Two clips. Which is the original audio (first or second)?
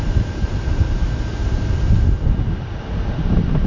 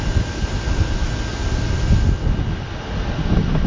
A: second